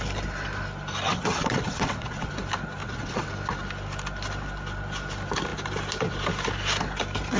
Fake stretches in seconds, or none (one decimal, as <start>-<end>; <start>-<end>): 1.1-2.3; 2.8-3.3